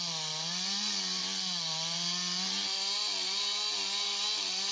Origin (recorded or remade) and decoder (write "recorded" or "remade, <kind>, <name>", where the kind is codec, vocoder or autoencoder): recorded